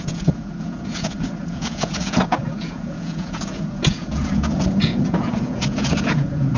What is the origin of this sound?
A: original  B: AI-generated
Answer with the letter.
B